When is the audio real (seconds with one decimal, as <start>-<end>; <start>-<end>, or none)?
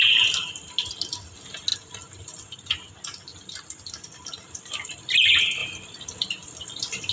0.0-7.1